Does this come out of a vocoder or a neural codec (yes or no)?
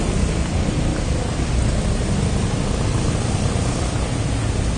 no